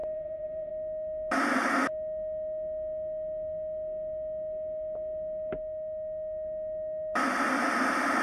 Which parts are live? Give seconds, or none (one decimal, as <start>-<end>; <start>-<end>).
0.7-8.2